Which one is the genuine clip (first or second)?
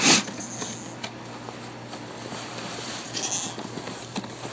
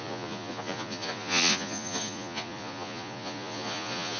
first